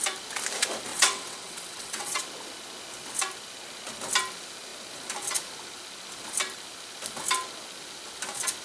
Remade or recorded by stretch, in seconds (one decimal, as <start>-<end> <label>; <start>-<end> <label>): 0.0-0.9 recorded; 0.9-2.2 remade; 2.2-8.6 recorded